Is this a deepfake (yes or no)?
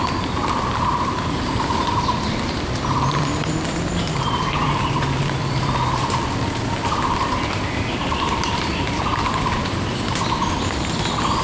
yes